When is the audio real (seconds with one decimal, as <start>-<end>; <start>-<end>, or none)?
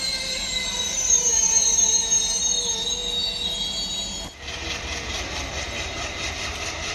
0.0-6.9